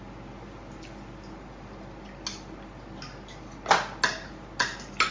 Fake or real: real